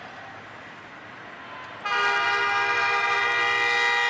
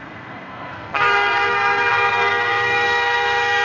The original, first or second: first